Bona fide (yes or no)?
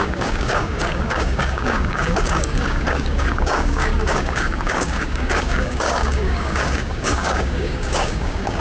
no